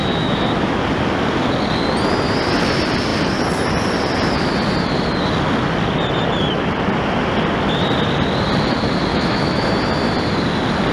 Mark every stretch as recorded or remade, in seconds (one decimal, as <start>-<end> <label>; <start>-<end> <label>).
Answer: 0.0-0.8 remade; 0.8-9.1 recorded; 9.1-9.7 remade; 9.7-10.9 recorded

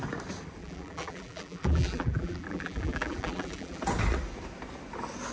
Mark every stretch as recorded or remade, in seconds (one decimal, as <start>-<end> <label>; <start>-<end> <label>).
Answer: 0.0-0.6 recorded; 0.6-3.8 remade; 3.8-5.3 recorded

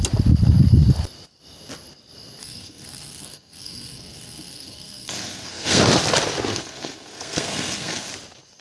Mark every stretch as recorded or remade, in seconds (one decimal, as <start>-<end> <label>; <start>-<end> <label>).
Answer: 0.0-2.4 recorded; 2.4-5.8 remade; 5.8-6.5 recorded; 6.5-8.1 remade; 8.1-8.6 recorded

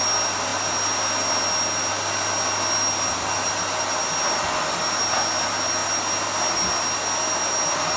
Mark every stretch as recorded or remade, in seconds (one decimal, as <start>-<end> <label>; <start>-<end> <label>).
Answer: 0.0-8.0 recorded

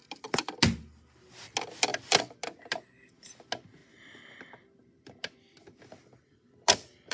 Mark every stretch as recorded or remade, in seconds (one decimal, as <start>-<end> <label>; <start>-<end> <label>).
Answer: 0.0-1.9 recorded; 1.9-2.4 remade; 2.4-3.8 recorded; 3.8-5.8 remade; 5.8-7.1 recorded

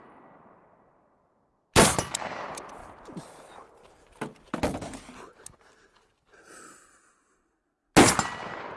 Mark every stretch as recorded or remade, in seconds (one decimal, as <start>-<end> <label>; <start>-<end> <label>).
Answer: 0.0-8.8 recorded

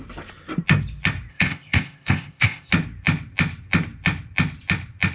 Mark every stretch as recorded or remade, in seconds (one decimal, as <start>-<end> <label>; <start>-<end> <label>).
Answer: 0.0-1.3 recorded; 1.3-2.7 remade; 2.7-5.1 recorded

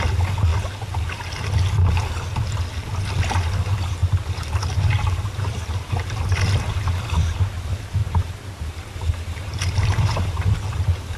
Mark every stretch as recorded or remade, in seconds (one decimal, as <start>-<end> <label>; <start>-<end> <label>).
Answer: 0.0-4.0 recorded; 4.0-6.4 remade; 6.4-8.0 recorded; 8.0-10.5 remade; 10.5-11.2 recorded